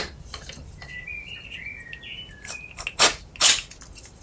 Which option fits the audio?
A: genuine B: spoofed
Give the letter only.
A